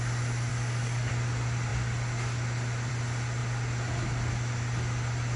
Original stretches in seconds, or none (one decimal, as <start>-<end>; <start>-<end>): 0.0-0.5; 1.1-5.4